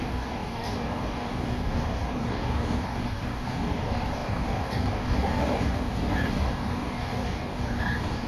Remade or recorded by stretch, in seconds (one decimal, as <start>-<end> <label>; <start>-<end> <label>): 0.0-8.3 remade